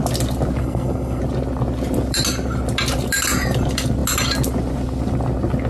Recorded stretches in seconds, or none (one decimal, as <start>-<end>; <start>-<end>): 0.0-0.6; 1.2-5.7